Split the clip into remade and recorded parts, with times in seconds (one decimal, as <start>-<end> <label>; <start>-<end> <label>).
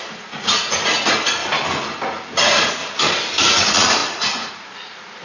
0.0-1.4 remade; 1.4-2.4 recorded; 2.4-2.8 remade; 2.8-3.4 recorded; 3.4-5.2 remade